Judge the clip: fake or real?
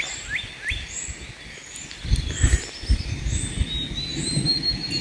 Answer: real